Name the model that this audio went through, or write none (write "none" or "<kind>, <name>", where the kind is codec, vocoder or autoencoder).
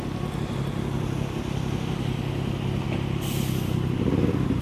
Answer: none